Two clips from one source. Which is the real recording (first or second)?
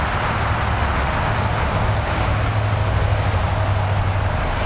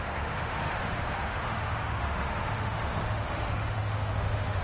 first